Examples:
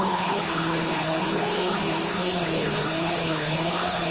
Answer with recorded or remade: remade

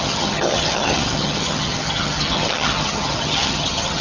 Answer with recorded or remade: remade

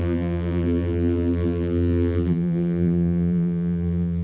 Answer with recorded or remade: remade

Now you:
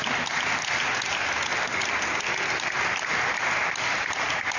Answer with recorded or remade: recorded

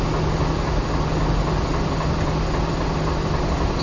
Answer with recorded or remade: recorded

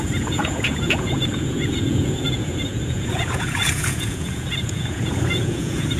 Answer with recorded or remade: remade